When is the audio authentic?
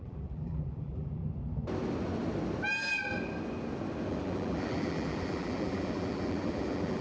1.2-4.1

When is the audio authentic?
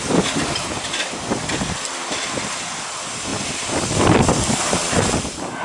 0.0-5.6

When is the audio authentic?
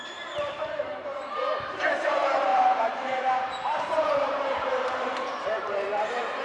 none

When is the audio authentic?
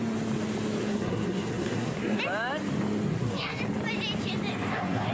0.0-0.8; 2.2-3.1; 3.6-4.5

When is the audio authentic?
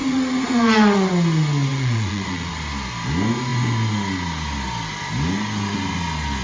1.1-1.7; 2.5-6.4